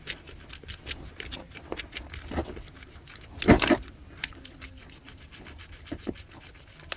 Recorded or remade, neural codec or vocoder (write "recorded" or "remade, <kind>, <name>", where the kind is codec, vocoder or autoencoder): recorded